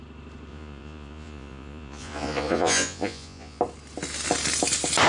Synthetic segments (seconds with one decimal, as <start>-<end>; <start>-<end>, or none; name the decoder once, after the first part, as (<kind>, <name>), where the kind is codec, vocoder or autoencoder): 0.5-3.6 (vocoder, Vocos)